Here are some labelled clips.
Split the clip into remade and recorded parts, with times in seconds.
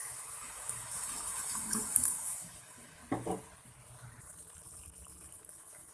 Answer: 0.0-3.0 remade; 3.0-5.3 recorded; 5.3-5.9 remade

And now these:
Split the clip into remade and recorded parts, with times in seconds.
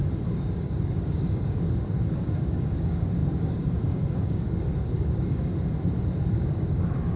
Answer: 0.0-5.5 remade; 5.5-6.3 recorded; 6.3-7.2 remade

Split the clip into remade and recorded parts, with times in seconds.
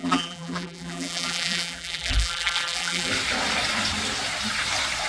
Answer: 0.0-3.1 remade; 3.1-5.1 recorded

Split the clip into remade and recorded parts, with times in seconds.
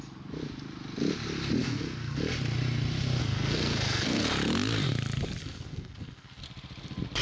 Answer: 0.0-1.6 recorded; 1.6-2.2 remade; 2.2-3.2 recorded; 3.2-4.2 remade; 4.2-5.4 recorded; 5.4-6.4 remade; 6.4-7.2 recorded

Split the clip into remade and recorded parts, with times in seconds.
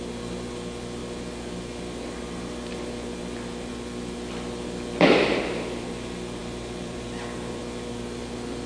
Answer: 0.0-6.4 recorded; 6.4-7.6 remade; 7.6-8.7 recorded